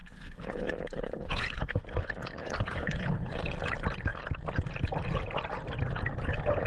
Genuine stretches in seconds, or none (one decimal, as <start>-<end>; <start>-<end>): 1.8-2.4; 3.3-6.7